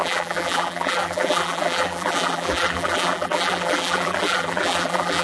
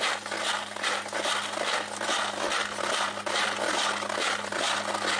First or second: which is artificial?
first